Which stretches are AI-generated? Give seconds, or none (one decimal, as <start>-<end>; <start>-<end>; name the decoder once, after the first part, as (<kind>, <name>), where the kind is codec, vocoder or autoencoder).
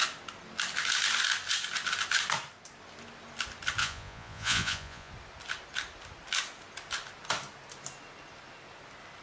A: 3.8-5.1 (vocoder, Vocos)